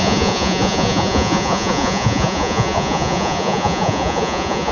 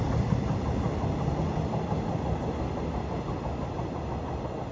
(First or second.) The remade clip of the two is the first